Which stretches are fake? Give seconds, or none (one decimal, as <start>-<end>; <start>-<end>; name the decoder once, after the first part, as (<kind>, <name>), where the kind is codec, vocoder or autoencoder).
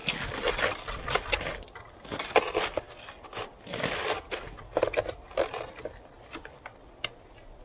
none